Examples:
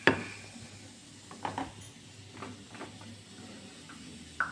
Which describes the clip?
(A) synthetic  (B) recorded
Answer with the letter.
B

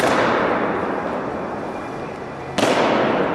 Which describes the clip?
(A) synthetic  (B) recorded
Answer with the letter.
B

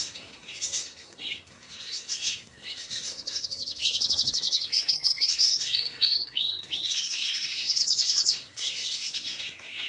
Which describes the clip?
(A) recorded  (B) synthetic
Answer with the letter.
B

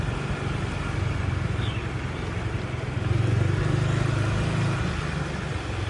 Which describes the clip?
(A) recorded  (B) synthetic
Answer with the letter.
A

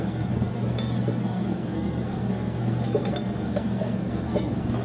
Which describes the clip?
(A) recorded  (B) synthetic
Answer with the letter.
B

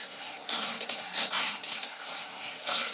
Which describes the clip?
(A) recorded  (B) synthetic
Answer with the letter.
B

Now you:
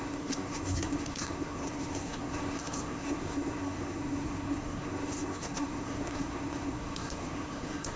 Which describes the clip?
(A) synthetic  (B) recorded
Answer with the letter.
A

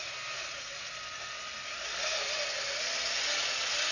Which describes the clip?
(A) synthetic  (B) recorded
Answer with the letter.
B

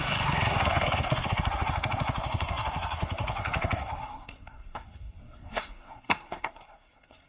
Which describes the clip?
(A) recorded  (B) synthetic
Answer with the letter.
B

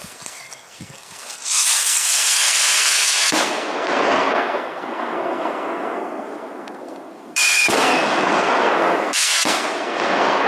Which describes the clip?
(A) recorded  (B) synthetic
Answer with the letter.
B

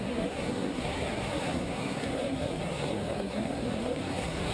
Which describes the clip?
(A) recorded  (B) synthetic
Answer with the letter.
B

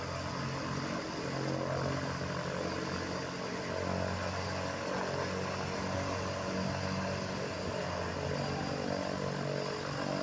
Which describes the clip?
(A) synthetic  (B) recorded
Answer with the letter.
B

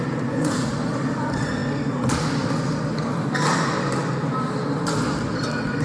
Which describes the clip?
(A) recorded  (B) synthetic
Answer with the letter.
A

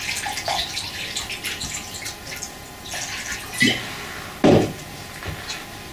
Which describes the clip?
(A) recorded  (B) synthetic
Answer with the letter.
A